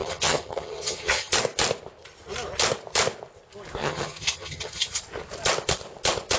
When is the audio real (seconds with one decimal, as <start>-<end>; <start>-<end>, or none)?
1.3-3.8; 5.0-6.4